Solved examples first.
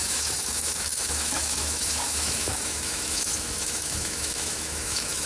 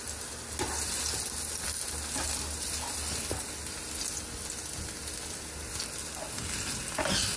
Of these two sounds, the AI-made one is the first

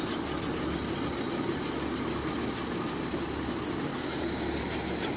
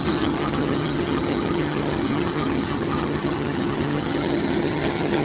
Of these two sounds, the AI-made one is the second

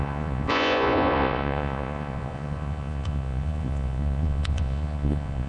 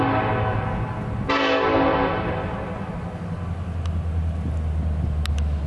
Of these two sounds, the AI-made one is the first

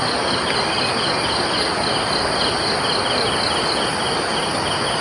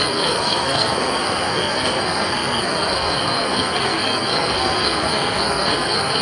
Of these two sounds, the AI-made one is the second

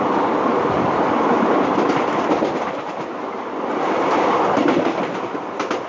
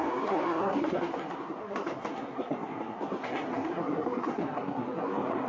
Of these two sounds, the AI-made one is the second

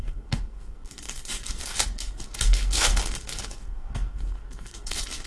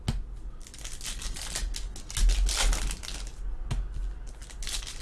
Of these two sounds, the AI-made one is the first